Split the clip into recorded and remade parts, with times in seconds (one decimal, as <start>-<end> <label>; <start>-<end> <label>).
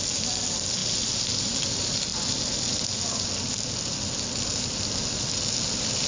0.0-6.1 recorded